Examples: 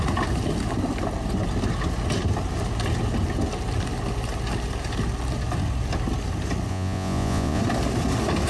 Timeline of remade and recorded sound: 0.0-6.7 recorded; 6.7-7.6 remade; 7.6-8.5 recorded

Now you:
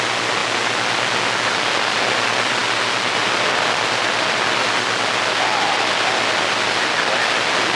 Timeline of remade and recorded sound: 0.0-7.8 recorded